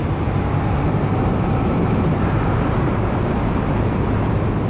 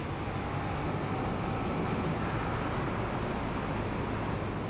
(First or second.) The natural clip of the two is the second